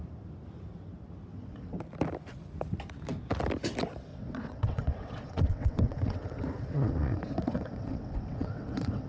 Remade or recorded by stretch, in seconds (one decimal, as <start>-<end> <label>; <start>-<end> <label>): 0.0-1.3 recorded; 1.3-1.8 remade; 1.8-4.1 recorded; 4.1-9.1 remade